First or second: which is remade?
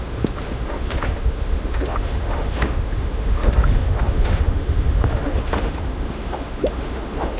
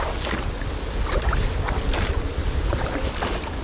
first